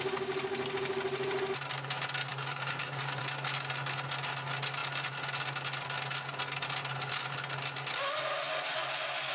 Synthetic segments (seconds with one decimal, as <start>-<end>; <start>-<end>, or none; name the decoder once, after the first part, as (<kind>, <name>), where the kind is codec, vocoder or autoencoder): 2.3-3.2 (codec, DAC)